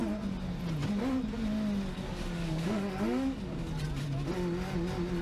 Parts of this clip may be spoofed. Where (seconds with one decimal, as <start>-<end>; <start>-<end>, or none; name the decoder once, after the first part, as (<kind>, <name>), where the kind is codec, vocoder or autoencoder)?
1.9-3.7 (codec, DAC)